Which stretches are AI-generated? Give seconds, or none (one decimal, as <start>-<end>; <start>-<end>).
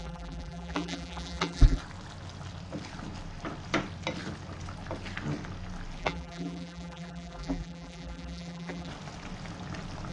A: 0.0-1.8; 6.0-8.9